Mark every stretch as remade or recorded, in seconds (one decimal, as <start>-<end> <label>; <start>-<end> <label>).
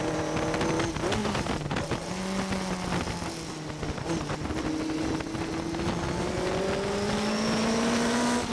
0.0-1.2 recorded; 1.2-2.1 remade; 2.1-8.5 recorded